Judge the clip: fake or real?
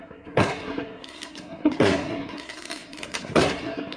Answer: fake